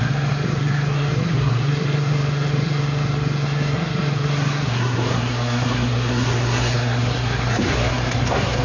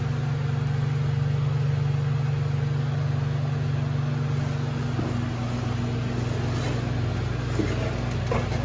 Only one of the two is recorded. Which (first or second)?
second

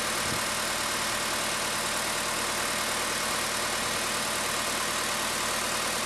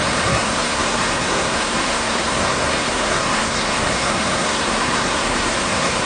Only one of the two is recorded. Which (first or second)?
first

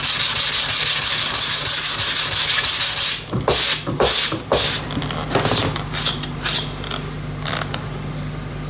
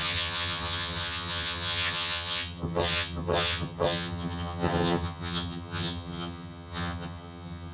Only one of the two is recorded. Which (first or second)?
first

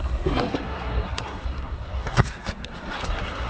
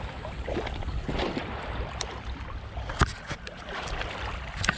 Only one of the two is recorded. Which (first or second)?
second